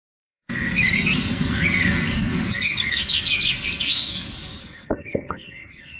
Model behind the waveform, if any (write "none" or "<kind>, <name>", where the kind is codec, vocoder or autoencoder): codec, SNAC